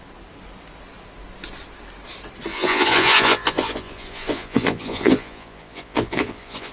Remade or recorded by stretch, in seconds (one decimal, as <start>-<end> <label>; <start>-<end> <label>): 0.0-2.5 recorded; 2.5-6.7 remade